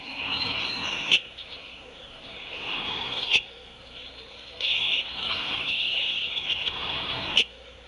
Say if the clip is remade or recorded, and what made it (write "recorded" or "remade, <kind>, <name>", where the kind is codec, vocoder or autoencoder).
remade, codec, SNAC